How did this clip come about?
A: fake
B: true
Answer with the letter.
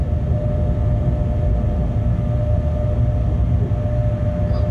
B